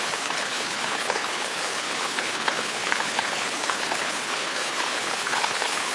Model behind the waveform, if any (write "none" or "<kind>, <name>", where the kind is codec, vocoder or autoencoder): codec, HILCodec